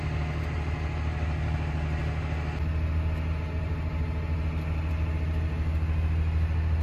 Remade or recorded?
recorded